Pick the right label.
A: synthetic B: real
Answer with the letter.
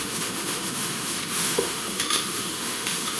A